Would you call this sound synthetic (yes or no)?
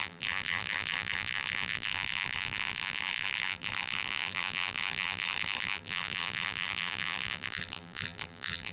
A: yes